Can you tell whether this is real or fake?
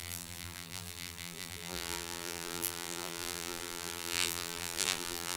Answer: fake